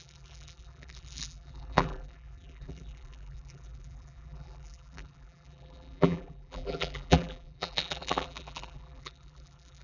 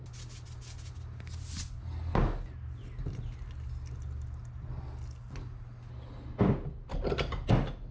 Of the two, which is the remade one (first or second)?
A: first